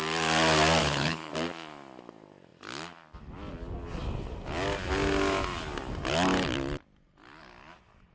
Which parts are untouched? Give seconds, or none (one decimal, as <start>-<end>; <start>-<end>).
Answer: 0.0-0.8; 1.3-8.1